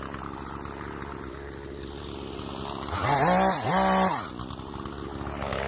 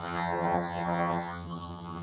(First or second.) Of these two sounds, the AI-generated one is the second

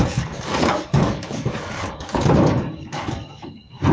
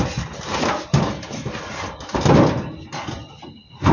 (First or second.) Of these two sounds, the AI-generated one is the first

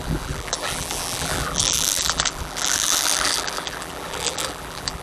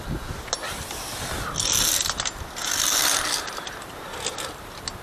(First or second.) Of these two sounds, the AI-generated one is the first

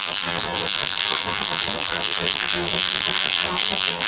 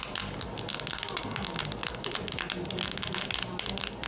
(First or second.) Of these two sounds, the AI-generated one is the first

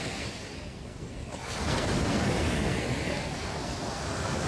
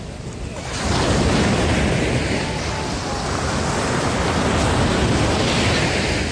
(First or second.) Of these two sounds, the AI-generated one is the first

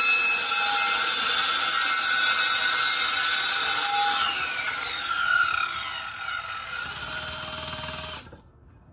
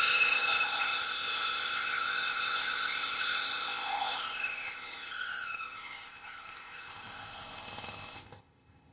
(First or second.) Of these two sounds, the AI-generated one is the second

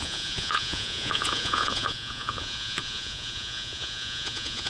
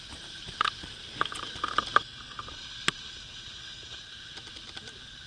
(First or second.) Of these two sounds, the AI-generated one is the first